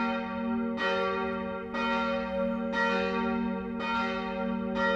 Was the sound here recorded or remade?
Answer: recorded